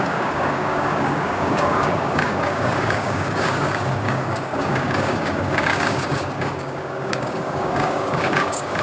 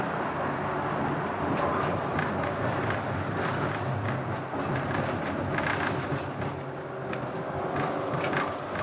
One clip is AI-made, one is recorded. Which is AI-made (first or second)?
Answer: first